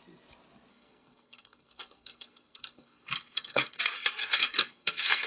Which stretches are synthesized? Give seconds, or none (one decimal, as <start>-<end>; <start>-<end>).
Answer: 0.7-3.8; 4.2-5.3